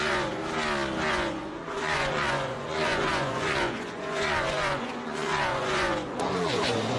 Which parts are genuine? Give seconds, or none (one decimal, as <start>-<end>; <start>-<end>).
0.4-1.1

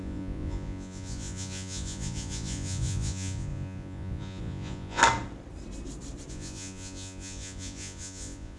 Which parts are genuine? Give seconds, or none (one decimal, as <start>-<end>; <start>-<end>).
5.0-6.3